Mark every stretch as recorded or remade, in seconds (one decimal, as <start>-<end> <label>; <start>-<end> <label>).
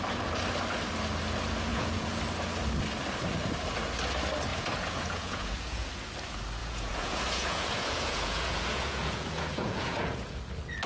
0.0-1.7 recorded; 1.7-2.2 remade; 2.2-4.5 recorded; 4.5-6.0 remade; 6.0-6.6 recorded; 6.6-10.4 remade; 10.4-10.9 recorded